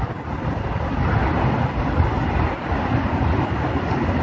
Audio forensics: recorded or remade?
recorded